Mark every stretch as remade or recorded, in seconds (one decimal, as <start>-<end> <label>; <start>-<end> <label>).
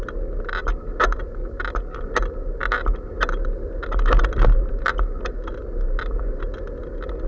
0.0-7.3 recorded